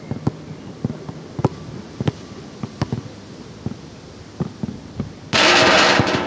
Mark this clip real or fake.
real